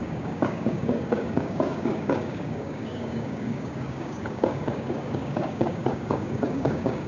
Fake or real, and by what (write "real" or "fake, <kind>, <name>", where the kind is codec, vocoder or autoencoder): fake, codec, DAC